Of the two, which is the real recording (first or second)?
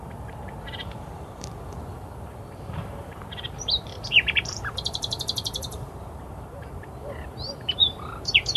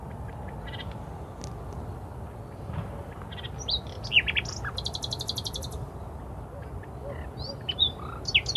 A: second